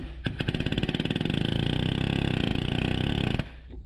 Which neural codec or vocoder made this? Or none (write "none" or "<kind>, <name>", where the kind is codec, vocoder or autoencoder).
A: none